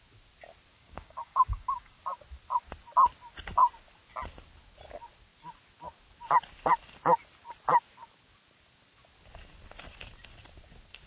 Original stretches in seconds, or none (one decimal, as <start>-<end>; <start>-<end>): 0.0-0.7; 2.0-11.1